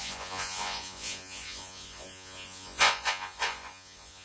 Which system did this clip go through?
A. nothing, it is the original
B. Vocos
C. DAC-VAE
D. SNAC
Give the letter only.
B